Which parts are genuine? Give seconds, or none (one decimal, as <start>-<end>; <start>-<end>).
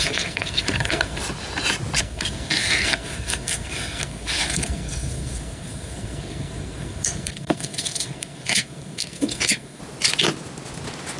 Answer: 1.2-2.0; 9.8-11.2